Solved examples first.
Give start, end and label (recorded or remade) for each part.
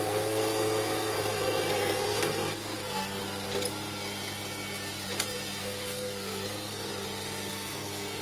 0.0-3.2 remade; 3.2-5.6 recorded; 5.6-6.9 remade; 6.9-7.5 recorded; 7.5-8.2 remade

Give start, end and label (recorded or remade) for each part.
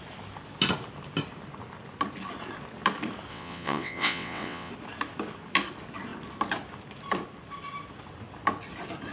0.0-3.3 recorded; 3.3-4.7 remade; 4.7-9.1 recorded